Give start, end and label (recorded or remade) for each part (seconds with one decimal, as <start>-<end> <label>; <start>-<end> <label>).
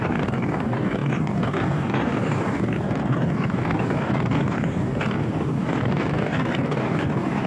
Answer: 0.0-7.5 remade